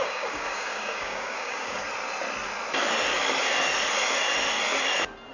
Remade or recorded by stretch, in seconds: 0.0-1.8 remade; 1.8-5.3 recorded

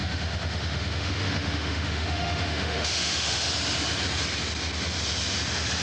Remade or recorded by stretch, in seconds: 0.0-3.5 remade; 3.5-5.8 recorded

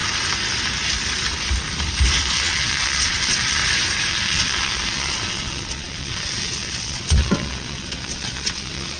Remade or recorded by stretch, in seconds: 0.0-2.2 recorded; 2.2-3.6 remade; 3.6-4.1 recorded; 4.1-9.0 remade

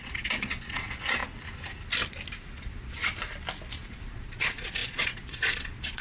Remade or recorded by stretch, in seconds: 0.0-1.2 remade; 1.2-2.5 recorded; 2.5-3.0 remade; 3.0-3.8 recorded; 3.8-6.0 remade

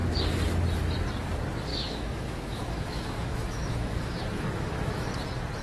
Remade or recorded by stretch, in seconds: 0.0-1.7 recorded; 1.7-5.1 remade; 5.1-5.6 recorded